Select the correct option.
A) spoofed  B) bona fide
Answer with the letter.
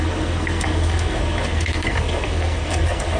A